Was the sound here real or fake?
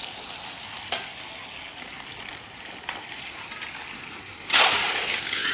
real